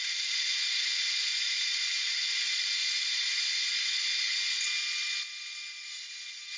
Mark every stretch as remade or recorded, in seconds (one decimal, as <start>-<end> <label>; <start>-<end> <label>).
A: 0.0-2.8 remade; 2.8-6.0 recorded; 6.0-6.6 remade